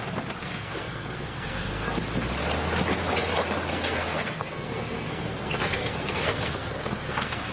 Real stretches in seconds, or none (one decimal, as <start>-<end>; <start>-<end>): 0.0-0.4; 2.0-3.7